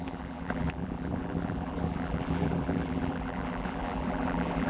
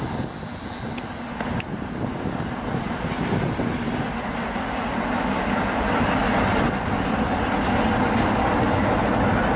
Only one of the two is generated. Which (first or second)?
first